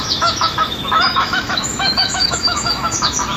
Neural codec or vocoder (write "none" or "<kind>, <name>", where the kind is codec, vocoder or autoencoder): autoencoder, DAC-VAE